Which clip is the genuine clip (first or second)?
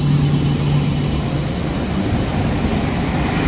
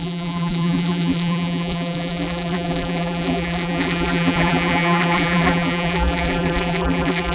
first